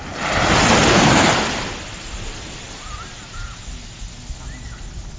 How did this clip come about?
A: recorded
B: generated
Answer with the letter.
A